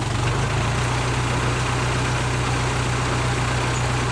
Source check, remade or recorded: recorded